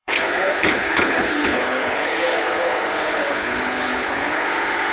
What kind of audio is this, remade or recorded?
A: remade